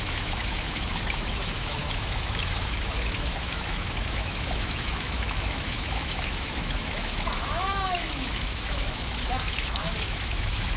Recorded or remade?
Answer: remade